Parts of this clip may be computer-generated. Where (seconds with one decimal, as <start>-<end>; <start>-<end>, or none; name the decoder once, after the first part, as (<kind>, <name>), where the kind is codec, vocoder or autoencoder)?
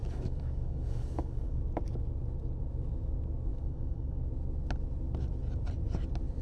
0.0-1.6 (codec, DAC); 3.5-4.2